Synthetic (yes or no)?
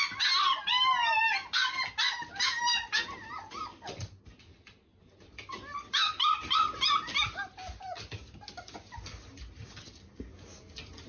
no